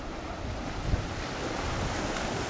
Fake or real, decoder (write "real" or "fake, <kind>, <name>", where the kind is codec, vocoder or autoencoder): real